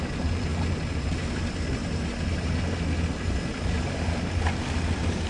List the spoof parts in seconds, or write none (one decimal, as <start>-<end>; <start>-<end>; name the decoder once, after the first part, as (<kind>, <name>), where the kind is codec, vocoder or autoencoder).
none